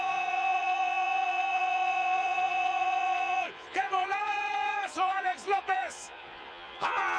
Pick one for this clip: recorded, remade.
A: remade